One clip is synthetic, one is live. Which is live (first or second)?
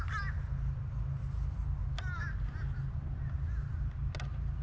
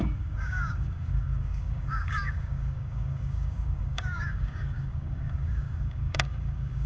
first